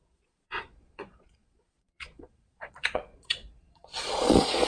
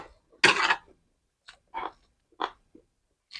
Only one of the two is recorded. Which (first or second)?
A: second